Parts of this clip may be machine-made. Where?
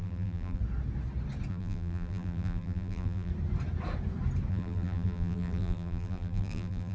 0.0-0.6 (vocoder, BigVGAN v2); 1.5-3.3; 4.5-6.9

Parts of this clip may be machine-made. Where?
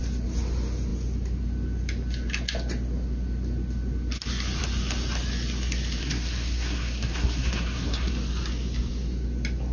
6.0-8.1 (codec, SNAC)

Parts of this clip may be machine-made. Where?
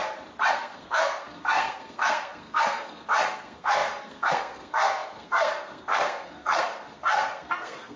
0.5-8.0 (codec, SNAC)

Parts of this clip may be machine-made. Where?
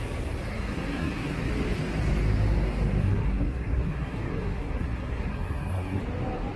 0.5-1.5 (codec, SNAC); 3.0-6.0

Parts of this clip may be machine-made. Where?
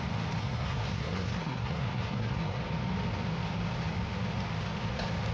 0.4-2.6 (codec, SNAC)